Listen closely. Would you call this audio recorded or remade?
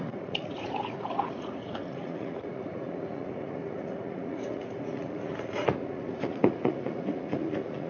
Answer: remade